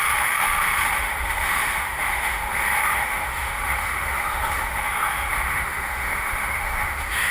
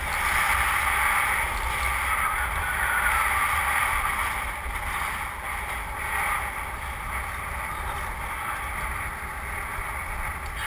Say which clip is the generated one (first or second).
first